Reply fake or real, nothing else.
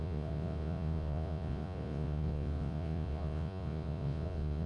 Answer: fake